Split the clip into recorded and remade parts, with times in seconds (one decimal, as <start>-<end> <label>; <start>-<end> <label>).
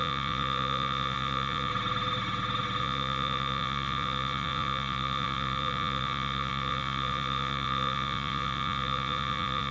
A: 0.0-1.7 remade; 1.7-2.8 recorded; 2.8-9.7 remade